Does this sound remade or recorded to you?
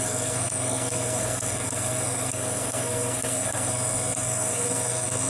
remade